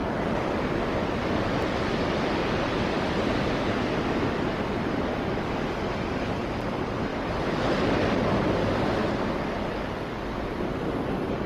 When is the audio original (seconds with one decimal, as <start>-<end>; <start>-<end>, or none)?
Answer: 0.0-7.1; 7.6-11.5